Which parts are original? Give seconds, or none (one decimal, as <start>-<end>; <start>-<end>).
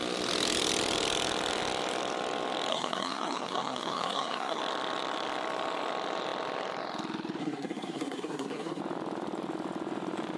0.0-2.7; 4.6-7.4; 8.8-10.4